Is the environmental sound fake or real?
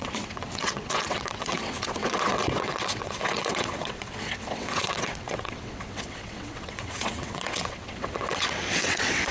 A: fake